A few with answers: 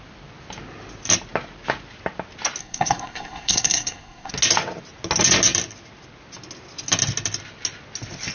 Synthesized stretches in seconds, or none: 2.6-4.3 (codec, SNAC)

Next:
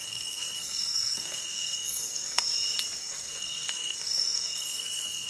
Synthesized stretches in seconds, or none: 0.0-2.4 (codec, SNAC); 3.0-5.3

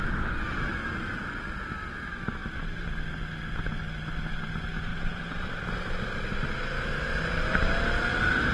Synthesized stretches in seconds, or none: 4.9-5.7 (vocoder, BigVGAN v2)